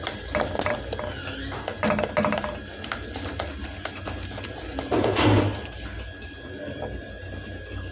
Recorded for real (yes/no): yes